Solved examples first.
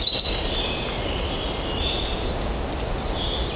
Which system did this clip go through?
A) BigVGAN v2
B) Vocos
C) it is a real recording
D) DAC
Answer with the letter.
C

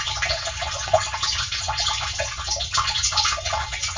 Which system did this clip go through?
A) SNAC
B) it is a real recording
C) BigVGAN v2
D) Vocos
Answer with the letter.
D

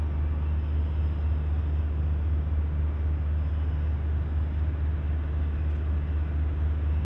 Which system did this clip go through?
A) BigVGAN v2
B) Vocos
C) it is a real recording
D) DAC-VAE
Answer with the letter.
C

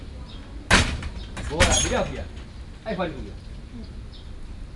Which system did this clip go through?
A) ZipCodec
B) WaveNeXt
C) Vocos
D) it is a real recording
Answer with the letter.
D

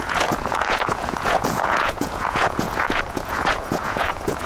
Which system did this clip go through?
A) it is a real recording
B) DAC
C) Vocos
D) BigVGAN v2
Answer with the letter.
C